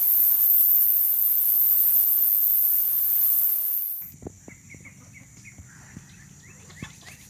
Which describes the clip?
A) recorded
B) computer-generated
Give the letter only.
A